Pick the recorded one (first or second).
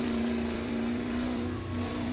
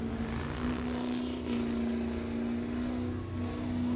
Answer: second